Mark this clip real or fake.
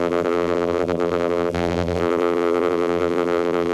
fake